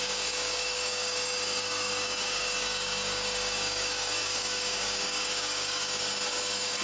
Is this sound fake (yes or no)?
yes